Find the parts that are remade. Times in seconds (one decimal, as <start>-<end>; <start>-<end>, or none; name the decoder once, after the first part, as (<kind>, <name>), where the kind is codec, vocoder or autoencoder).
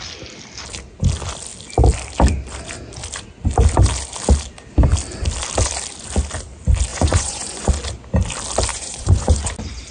6.9-7.7 (vocoder, Vocos); 8.7-9.5